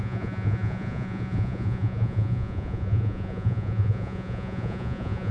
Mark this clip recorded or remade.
remade